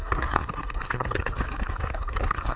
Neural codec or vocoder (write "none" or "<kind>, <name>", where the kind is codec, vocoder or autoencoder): codec, SNAC